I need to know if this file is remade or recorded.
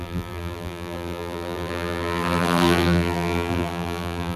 remade